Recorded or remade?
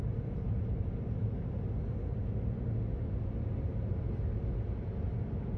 recorded